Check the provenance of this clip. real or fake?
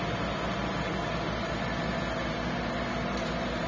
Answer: real